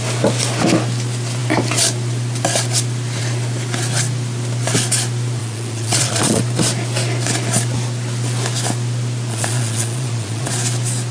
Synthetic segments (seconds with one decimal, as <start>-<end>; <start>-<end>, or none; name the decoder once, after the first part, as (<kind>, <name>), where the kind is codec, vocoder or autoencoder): 5.4-6.4 (vocoder, Vocos); 9.3-10.5

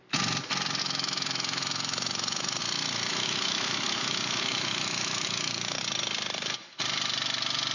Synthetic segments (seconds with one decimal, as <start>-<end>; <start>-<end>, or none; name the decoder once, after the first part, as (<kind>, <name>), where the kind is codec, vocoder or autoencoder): 0.8-2.6 (autoencoder, DAC-VAE); 3.1-5.8

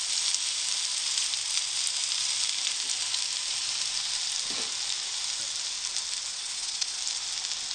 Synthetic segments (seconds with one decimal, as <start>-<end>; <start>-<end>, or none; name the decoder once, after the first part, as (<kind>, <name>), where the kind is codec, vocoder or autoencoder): 6.3-7.0 (vocoder, WaveNeXt)

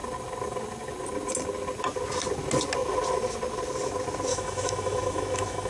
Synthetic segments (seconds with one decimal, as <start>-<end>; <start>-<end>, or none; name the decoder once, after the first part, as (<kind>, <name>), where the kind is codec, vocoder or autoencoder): 4.3-5.7 (autoencoder, DAC-VAE)

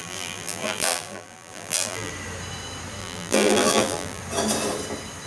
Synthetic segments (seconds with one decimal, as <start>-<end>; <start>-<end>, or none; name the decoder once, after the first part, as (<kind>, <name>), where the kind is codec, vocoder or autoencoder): 0.0-2.1 (vocoder, BigVGAN v2); 3.0-4.2

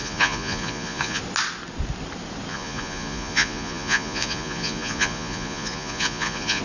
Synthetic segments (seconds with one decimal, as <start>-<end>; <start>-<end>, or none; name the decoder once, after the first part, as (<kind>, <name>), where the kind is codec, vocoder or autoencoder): 0.0-1.2 (vocoder, Vocos); 2.5-6.6